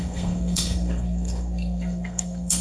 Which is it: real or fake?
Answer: fake